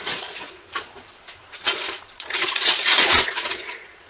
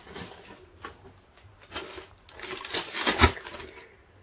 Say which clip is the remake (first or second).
first